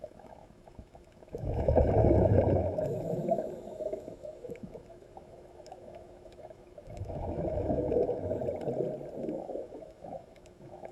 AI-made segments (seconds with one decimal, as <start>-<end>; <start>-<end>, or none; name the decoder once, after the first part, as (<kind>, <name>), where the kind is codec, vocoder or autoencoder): 0.0-8.4 (autoencoder, DAC-VAE); 9.2-10.9